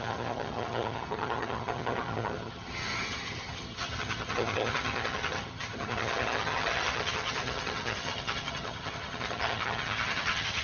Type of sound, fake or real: fake